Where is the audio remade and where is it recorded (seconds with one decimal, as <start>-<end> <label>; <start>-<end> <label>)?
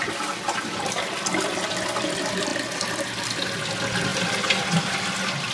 0.0-5.5 recorded